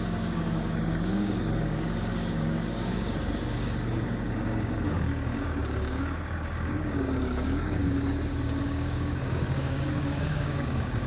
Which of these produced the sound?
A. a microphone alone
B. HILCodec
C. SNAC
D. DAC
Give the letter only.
D